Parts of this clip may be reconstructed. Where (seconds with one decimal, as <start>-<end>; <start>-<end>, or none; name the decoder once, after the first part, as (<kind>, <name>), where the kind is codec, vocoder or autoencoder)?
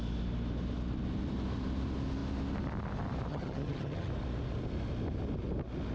3.3-4.1 (vocoder, HiFi-GAN)